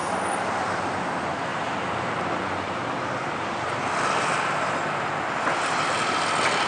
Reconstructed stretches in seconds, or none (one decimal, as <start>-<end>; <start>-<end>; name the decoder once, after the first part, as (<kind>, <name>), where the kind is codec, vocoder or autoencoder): 0.0-0.8 (vocoder, BigVGAN v2); 1.5-4.7